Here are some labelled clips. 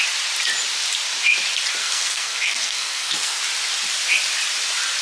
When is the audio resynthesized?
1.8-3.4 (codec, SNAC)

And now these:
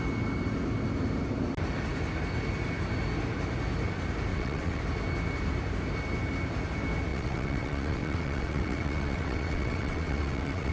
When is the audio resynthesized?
4.3-4.8 (vocoder, WaveNeXt); 7.1-10.7

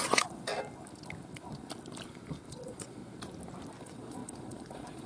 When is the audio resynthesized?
0.0-0.5 (vocoder, Vocos); 2.5-3.0; 3.8-5.1

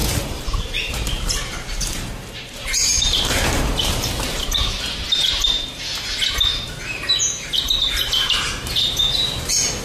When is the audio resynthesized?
0.0-4.1 (vocoder, BigVGAN v2)

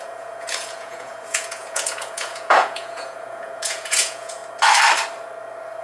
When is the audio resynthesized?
0.0-4.4 (vocoder, Vocos)

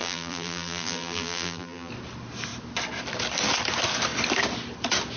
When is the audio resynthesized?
0.0-1.9 (vocoder, BigVGAN v2)